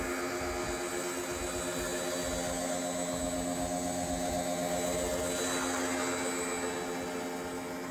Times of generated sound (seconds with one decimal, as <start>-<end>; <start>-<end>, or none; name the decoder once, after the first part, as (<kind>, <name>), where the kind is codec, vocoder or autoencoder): none